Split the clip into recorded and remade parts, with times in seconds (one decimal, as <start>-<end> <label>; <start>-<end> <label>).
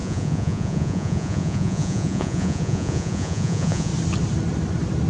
0.0-3.9 remade; 3.9-5.1 recorded